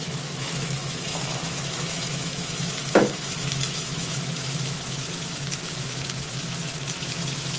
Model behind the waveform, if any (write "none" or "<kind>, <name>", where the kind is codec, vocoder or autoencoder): autoencoder, DAC-VAE